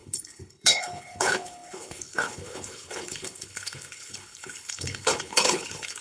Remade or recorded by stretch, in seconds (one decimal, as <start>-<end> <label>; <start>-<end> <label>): 0.0-6.0 remade